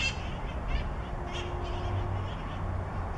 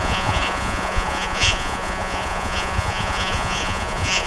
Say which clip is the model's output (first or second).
second